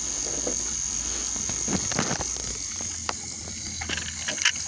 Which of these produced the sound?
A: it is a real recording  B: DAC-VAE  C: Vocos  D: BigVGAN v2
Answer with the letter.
A